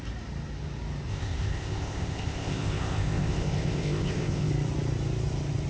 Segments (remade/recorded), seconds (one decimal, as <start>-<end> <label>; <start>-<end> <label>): 0.0-1.1 recorded; 1.1-4.5 remade; 4.5-5.7 recorded

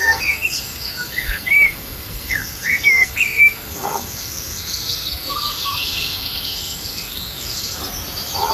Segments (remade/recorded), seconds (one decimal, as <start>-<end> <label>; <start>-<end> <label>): 0.0-7.8 remade; 7.8-8.5 recorded

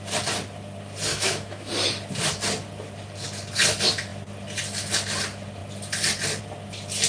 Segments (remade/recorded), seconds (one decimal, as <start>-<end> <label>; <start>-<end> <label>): 0.0-1.1 recorded; 1.1-1.7 remade; 1.7-7.1 recorded

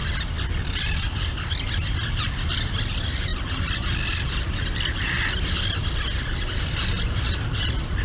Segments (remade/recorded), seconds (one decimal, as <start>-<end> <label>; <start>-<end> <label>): 0.0-8.0 recorded

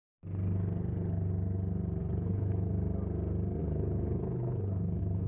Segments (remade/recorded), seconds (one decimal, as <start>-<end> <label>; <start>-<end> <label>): 0.0-2.0 recorded; 2.0-2.7 remade; 2.7-3.6 recorded; 3.6-5.3 remade

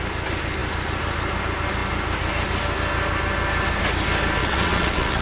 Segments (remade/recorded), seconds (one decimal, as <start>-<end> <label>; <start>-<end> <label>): 0.0-4.4 recorded; 4.4-5.2 remade